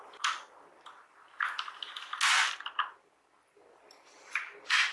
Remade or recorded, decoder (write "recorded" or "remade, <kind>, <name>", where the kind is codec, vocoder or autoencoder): recorded